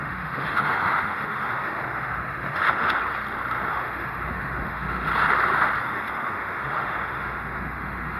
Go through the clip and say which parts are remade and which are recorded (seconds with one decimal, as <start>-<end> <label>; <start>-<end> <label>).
0.0-3.0 remade; 3.0-3.7 recorded; 3.7-5.1 remade; 5.1-5.8 recorded; 5.8-8.2 remade